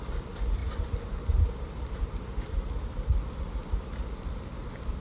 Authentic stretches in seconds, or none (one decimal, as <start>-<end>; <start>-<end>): 0.0-5.0